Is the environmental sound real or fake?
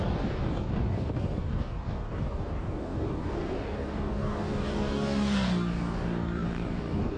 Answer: fake